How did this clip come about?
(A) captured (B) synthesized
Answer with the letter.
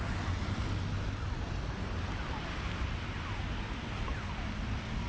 A